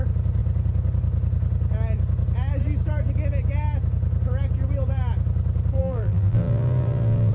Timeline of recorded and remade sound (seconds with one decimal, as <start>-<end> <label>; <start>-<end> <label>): 0.0-5.8 recorded; 5.8-7.3 remade